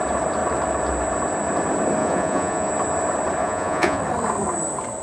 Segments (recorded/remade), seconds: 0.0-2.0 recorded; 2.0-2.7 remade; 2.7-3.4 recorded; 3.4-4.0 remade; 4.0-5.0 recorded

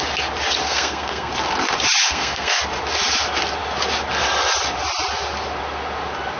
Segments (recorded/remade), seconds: 0.0-0.6 recorded; 0.6-1.3 remade; 1.3-2.0 recorded; 2.0-2.6 remade; 2.6-6.4 recorded

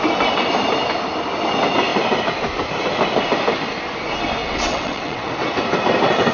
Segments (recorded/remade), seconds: 0.0-4.4 recorded; 4.4-5.3 remade; 5.3-6.3 recorded

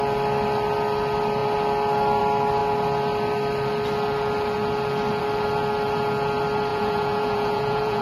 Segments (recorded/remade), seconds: 0.0-6.7 recorded; 6.7-8.0 remade

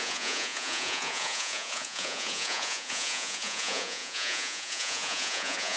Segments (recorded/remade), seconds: 0.0-5.8 remade

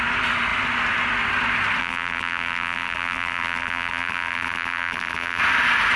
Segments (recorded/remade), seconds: 0.0-1.8 recorded; 1.8-5.4 remade; 5.4-6.0 recorded